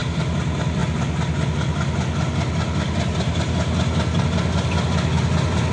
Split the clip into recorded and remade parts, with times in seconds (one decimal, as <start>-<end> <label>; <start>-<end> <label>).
0.0-5.7 recorded